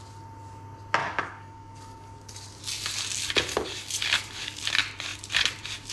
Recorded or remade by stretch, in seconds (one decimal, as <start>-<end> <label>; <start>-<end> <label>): 0.0-1.0 recorded; 1.0-2.6 remade; 2.6-3.5 recorded; 3.5-4.6 remade; 4.6-5.9 recorded